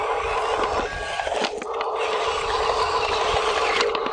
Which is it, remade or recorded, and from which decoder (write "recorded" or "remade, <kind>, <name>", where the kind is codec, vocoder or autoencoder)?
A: recorded